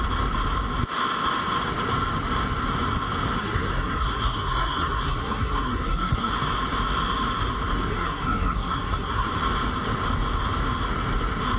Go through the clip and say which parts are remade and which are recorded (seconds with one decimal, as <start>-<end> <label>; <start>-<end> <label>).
0.0-3.4 recorded; 3.4-6.3 remade; 6.3-7.9 recorded; 7.9-9.3 remade; 9.3-11.6 recorded